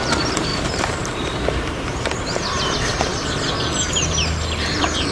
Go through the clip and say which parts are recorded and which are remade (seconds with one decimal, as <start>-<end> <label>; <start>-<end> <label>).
0.0-3.1 remade; 3.1-5.1 recorded